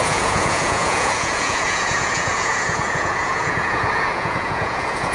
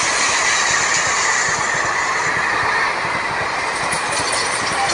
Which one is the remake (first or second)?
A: first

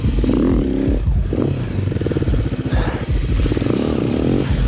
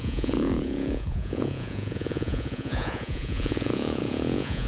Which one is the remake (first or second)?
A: second